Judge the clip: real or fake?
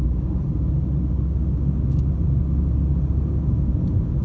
real